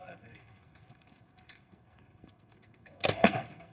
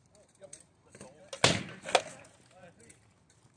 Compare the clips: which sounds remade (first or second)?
first